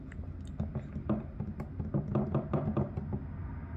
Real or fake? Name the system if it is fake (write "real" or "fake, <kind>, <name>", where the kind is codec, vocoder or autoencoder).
real